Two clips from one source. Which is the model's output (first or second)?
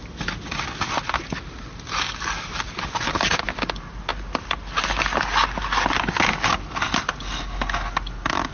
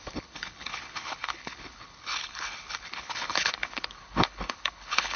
second